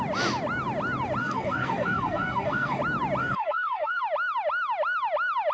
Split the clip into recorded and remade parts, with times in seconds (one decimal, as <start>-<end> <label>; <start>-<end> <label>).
0.0-1.2 recorded; 1.2-2.8 remade; 2.8-3.2 recorded; 3.2-4.0 remade; 4.0-5.5 recorded